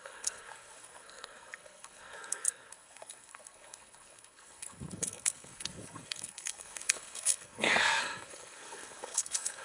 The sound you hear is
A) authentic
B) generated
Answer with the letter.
B